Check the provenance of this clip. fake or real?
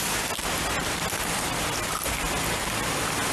real